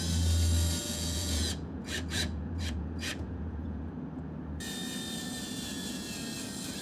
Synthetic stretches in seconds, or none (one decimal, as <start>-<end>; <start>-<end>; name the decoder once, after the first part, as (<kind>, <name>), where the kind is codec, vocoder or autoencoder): 0.8-3.9 (vocoder, Vocos)

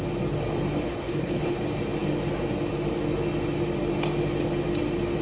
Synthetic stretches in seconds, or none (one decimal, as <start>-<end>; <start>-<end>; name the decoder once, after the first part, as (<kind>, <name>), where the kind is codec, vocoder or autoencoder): 0.9-1.6 (codec, HILCodec)

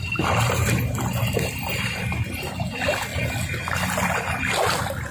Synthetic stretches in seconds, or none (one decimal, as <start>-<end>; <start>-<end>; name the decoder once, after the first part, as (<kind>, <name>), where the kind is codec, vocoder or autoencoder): none

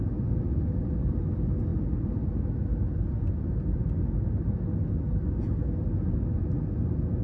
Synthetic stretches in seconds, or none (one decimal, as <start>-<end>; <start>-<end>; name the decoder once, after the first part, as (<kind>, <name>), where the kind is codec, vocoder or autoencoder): none

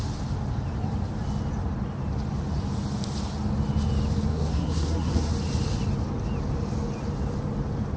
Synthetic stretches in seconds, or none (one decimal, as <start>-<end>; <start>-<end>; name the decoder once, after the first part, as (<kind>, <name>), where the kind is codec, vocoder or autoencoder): 4.3-5.3 (codec, SNAC)

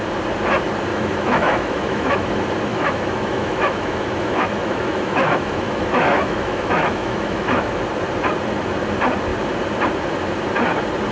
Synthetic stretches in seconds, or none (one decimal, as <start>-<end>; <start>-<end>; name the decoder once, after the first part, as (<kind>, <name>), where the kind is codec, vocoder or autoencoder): 0.9-2.3 (autoencoder, DAC-VAE); 2.7-7.8

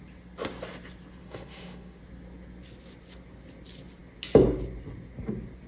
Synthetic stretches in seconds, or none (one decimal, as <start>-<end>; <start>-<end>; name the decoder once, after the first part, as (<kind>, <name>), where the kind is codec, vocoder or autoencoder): 1.2-2.0 (autoencoder, DAC-VAE)

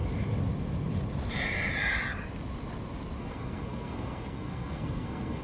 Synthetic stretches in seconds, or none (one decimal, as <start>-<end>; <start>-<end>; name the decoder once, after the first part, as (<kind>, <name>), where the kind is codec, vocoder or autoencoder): 3.2-5.4 (codec, SNAC)